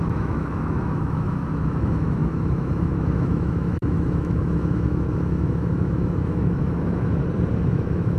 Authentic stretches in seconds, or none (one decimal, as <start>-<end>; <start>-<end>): 7.1-7.6